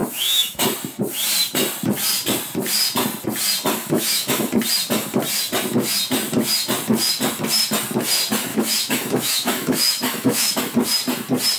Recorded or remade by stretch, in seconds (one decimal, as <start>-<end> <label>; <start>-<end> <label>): 0.0-0.6 remade; 0.6-3.8 recorded; 3.8-4.5 remade; 4.5-8.5 recorded; 8.5-10.6 remade; 10.6-11.6 recorded